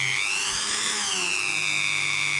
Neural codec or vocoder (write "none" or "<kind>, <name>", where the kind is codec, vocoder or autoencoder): autoencoder, DAC-VAE